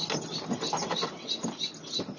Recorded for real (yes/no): yes